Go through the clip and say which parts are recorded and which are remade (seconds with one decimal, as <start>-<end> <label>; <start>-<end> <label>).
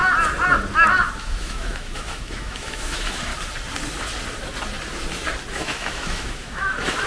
0.0-1.2 recorded; 1.2-3.3 remade; 3.3-5.5 recorded; 5.5-7.1 remade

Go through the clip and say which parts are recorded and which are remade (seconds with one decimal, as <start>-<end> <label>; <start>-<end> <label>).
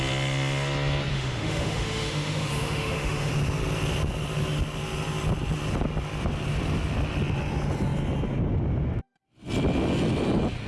0.0-1.1 recorded; 1.1-3.3 remade; 3.3-10.7 recorded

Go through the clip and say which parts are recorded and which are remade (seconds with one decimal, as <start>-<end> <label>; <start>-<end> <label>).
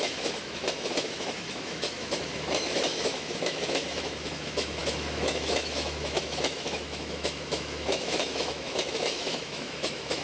0.0-10.2 remade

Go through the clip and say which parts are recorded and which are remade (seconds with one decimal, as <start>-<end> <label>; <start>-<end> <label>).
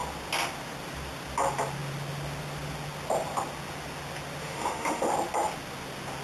0.0-4.4 recorded; 4.4-5.1 remade; 5.1-6.2 recorded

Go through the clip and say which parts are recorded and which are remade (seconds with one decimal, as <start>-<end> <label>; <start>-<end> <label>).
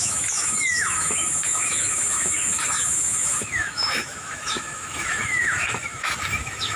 0.0-6.8 remade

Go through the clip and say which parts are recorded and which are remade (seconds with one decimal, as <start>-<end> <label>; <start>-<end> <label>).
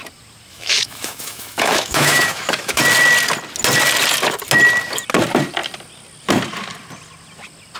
0.0-0.5 recorded; 0.5-2.8 remade; 2.8-7.8 recorded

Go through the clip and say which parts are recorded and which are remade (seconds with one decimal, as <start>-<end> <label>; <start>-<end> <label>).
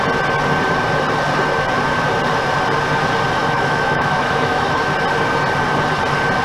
0.0-3.4 recorded; 3.4-4.8 remade; 4.8-6.4 recorded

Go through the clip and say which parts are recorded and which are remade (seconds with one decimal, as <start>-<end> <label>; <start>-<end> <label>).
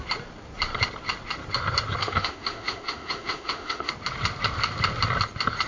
0.0-2.0 recorded; 2.0-3.9 remade; 3.9-5.7 recorded